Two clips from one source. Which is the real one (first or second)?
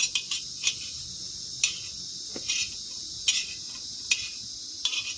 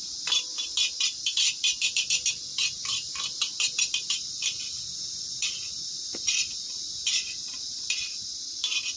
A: first